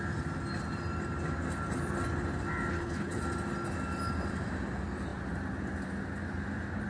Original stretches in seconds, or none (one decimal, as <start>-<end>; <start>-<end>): 0.0-2.7; 3.2-6.9